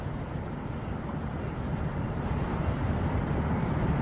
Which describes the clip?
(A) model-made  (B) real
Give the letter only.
B